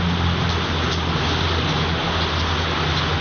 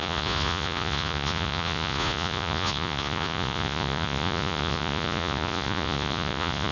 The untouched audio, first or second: first